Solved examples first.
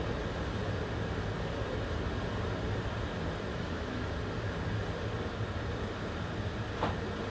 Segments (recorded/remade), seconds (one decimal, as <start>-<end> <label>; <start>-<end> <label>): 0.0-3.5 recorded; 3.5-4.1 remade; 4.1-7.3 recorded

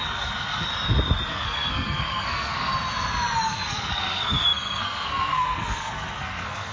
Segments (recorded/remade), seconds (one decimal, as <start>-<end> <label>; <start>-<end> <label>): 0.0-0.7 remade; 0.7-1.3 recorded; 1.3-2.7 remade; 2.7-3.5 recorded; 3.5-6.7 remade

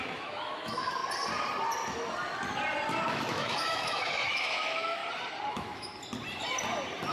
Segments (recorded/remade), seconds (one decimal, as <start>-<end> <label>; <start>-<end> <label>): 0.0-1.0 remade; 1.0-3.1 recorded; 3.1-5.0 remade; 5.0-5.5 recorded; 5.5-5.9 remade; 5.9-7.1 recorded